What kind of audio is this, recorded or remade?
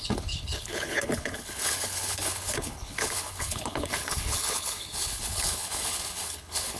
remade